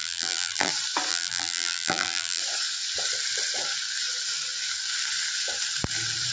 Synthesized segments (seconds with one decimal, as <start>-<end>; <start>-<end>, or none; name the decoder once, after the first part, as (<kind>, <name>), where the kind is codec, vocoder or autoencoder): 0.0-0.7 (vocoder, BigVGAN v2); 1.1-2.4

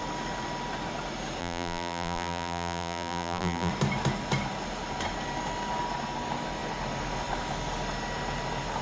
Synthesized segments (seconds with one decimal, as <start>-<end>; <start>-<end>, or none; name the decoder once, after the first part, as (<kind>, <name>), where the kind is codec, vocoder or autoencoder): 1.4-3.7 (vocoder, BigVGAN v2)

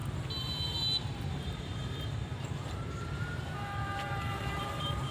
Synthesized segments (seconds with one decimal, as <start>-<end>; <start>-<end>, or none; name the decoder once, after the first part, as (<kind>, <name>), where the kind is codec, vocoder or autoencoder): 1.3-5.1 (vocoder, BigVGAN v2)

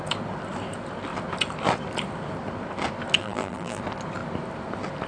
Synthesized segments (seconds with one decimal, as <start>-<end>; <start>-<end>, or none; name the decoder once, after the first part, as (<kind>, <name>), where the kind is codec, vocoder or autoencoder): 3.2-3.8 (vocoder, BigVGAN v2)

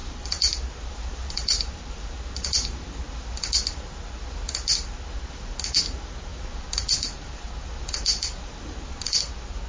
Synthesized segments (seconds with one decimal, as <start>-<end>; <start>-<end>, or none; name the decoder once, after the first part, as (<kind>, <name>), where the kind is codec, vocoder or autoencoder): 0.0-3.0 (vocoder, BigVGAN v2); 6.3-9.2

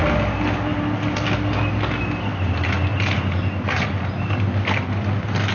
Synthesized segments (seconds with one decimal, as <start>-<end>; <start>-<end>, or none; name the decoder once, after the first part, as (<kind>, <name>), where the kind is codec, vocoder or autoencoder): 2.9-4.3 (vocoder, BigVGAN v2)

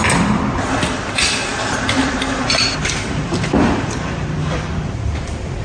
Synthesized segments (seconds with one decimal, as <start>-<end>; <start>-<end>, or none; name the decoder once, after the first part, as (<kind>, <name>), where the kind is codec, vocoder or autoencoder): 0.0-5.6 (vocoder, BigVGAN v2)

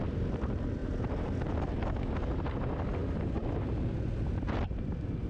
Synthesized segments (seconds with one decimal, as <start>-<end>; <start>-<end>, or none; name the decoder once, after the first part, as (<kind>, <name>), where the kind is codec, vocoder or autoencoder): 0.0-0.8 (vocoder, BigVGAN v2); 2.6-3.0